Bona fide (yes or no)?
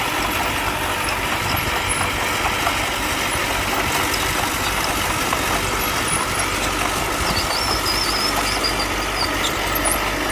yes